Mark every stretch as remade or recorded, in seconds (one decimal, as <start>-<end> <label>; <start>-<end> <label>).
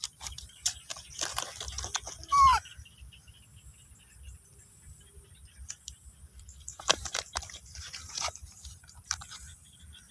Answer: 0.0-0.9 remade; 0.9-4.7 recorded; 4.7-10.1 remade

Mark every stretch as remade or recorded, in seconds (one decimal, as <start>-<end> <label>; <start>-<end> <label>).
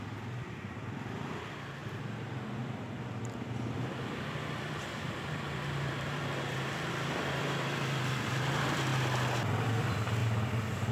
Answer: 0.0-8.9 remade; 8.9-9.6 recorded; 9.6-10.2 remade; 10.2-10.9 recorded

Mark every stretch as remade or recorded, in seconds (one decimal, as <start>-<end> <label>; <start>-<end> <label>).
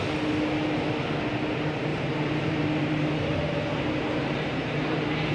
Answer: 0.0-1.9 recorded; 1.9-5.3 remade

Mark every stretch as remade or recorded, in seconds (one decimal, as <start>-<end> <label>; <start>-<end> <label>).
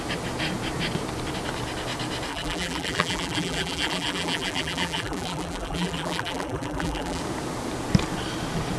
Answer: 0.0-2.3 recorded; 2.3-7.2 remade; 7.2-8.8 recorded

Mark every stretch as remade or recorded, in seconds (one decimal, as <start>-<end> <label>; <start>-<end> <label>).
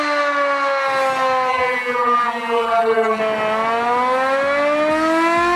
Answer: 0.0-1.5 recorded; 1.5-3.2 remade; 3.2-5.6 recorded